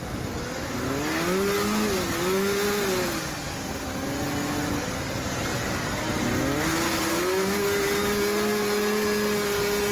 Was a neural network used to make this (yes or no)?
no